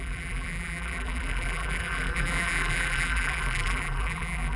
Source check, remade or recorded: remade